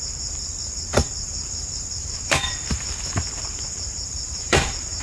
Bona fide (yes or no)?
no